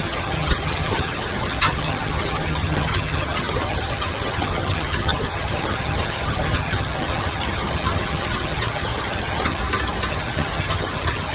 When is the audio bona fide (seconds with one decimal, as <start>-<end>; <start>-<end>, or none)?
9.6-10.1